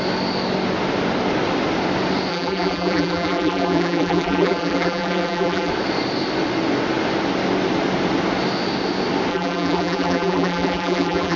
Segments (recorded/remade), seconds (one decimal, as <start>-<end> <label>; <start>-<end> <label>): 0.0-2.3 recorded; 2.3-5.7 remade; 5.7-9.3 recorded; 9.3-11.4 remade